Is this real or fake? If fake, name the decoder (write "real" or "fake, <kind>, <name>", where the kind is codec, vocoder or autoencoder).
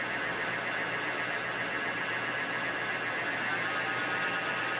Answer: real